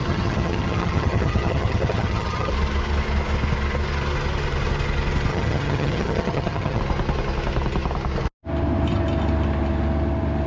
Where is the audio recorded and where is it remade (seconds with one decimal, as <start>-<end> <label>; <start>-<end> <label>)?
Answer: 0.0-2.5 remade; 2.5-5.3 recorded; 5.3-6.8 remade; 6.8-10.5 recorded